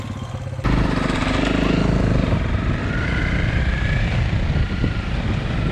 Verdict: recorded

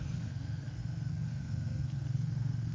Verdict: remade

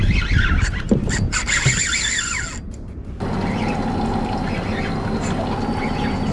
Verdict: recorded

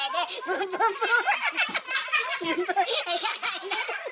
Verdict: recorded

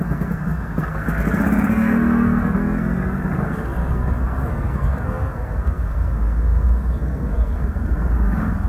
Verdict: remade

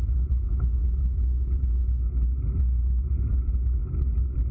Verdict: recorded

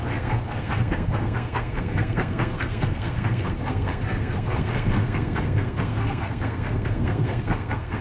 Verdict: remade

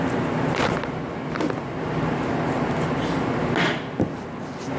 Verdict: recorded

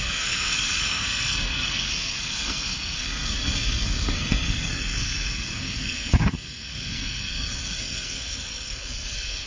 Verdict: remade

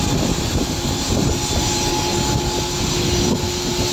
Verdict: recorded